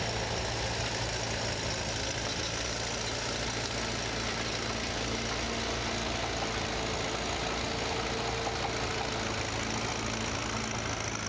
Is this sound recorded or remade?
recorded